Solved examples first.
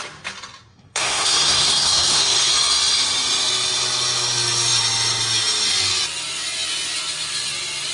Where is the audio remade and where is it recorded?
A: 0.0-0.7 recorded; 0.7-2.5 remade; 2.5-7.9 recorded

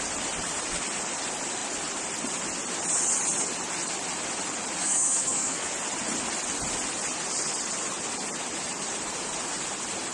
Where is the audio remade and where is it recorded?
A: 0.0-4.8 recorded; 4.8-5.7 remade; 5.7-10.1 recorded

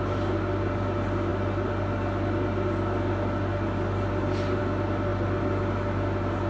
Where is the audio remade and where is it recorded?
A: 0.0-6.5 recorded

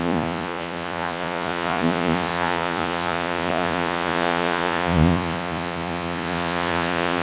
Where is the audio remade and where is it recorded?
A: 0.0-7.2 remade

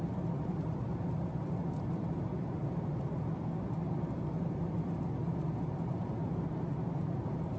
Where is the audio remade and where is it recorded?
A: 0.0-7.6 recorded